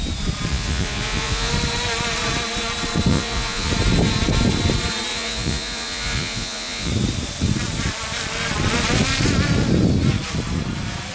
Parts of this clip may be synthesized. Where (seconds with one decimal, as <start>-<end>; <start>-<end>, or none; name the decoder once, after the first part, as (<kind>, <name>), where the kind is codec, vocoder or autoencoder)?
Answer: 0.5-1.5 (vocoder, Vocos); 3.1-3.7; 5.1-6.9